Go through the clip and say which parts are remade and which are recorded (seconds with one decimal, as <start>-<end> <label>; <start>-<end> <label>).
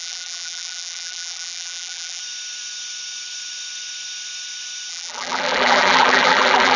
0.0-2.2 remade; 2.2-4.9 recorded; 4.9-6.8 remade